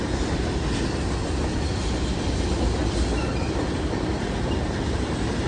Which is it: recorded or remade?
recorded